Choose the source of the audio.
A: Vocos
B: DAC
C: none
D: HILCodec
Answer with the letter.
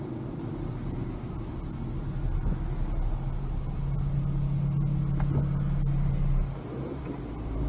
C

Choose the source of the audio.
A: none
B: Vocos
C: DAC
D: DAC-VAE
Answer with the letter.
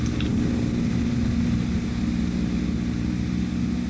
A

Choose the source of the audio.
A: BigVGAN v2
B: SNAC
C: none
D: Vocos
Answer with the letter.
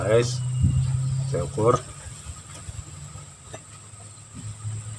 C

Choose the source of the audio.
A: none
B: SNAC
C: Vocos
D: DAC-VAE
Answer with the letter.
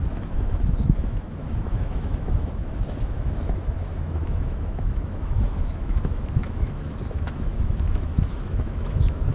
D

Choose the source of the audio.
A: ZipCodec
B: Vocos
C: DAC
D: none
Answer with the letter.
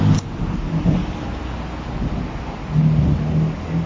D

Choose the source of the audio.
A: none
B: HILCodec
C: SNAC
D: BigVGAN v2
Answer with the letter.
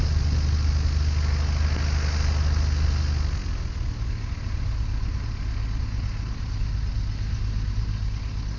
A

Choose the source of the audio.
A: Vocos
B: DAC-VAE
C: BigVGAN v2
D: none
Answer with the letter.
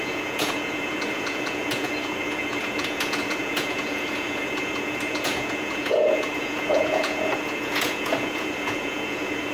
A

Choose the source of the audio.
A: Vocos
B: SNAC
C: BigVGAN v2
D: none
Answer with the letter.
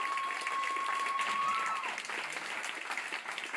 D